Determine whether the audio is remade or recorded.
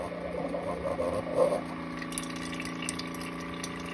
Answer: recorded